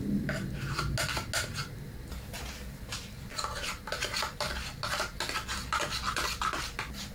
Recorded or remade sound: recorded